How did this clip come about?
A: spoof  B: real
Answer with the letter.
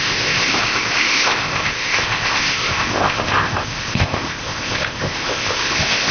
A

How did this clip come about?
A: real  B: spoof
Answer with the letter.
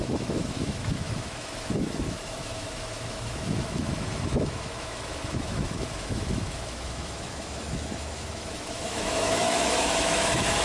B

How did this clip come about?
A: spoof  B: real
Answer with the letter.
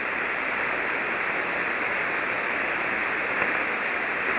B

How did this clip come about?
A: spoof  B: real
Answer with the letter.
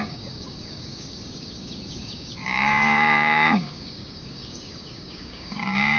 A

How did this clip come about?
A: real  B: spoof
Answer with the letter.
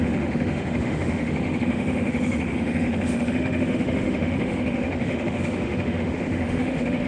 B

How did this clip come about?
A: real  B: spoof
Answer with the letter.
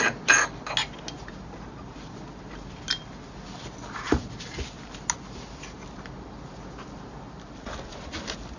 A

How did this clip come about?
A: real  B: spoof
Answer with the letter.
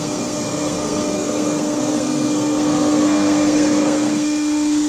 B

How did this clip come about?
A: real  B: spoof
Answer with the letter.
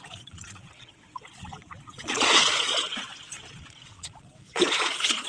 B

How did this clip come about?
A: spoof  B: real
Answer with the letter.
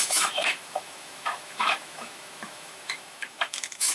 A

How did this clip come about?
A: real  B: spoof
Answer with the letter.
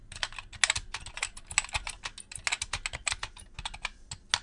A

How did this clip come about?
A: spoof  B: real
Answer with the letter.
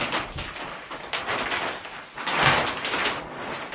B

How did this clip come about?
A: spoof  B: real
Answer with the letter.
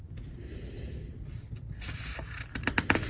B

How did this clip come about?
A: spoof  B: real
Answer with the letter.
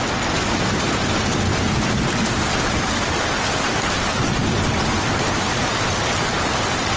B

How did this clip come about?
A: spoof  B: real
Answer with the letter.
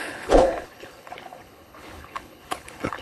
A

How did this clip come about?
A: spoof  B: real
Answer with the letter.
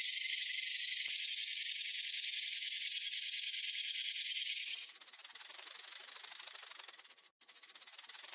B